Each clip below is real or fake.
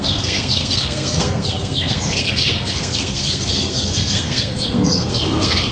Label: fake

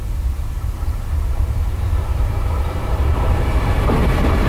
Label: fake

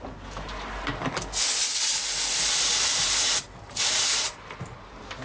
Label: real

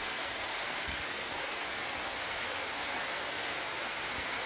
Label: fake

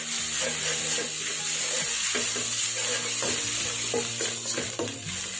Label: real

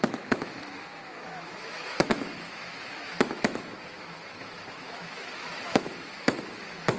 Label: fake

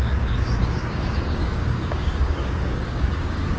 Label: fake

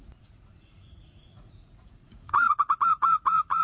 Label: fake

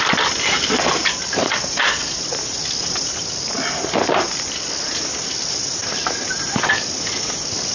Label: real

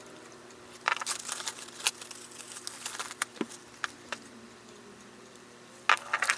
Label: real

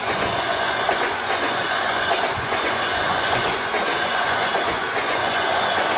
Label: fake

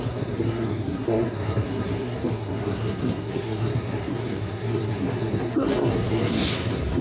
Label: fake